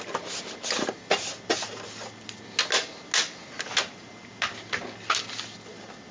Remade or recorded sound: recorded